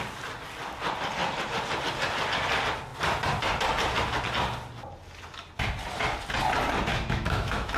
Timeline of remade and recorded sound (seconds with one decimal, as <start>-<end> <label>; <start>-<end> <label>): 0.0-6.9 recorded; 6.9-7.8 remade